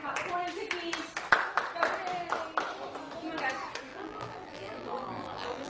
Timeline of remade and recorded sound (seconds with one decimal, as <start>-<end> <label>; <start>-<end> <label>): 0.0-3.9 recorded; 3.9-5.7 remade

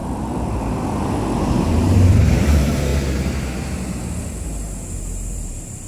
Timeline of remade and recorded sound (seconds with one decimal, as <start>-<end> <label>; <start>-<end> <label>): 0.0-1.7 recorded; 1.7-2.9 remade; 2.9-5.0 recorded; 5.0-5.9 remade

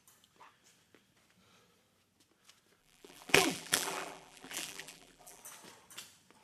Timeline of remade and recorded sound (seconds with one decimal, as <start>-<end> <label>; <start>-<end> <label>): 0.0-2.8 recorded; 2.8-5.4 remade; 5.4-6.4 recorded

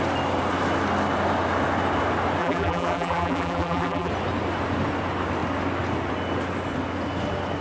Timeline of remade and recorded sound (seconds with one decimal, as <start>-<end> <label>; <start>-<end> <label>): 0.0-2.4 recorded; 2.4-4.1 remade; 4.1-7.6 recorded

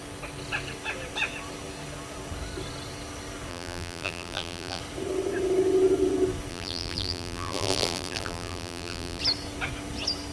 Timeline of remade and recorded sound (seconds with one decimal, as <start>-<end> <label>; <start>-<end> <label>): 0.0-3.5 recorded; 3.5-4.8 remade; 4.8-6.5 recorded; 6.5-9.2 remade; 9.2-10.3 recorded